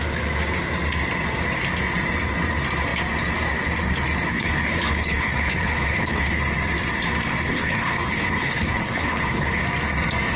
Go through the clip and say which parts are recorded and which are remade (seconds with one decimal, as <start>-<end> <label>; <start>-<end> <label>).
0.0-4.3 recorded; 4.3-6.4 remade; 6.4-7.5 recorded; 7.5-9.6 remade; 9.6-10.4 recorded